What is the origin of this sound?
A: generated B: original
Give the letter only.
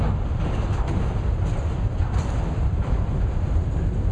B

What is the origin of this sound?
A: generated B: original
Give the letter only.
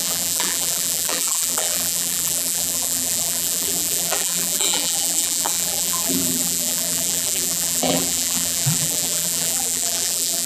A